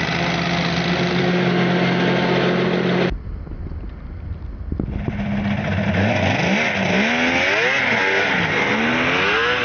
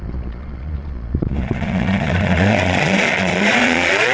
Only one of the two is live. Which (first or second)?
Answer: first